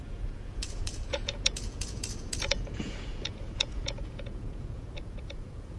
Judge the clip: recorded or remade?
remade